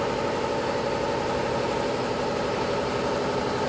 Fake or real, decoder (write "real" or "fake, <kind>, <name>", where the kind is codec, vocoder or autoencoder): real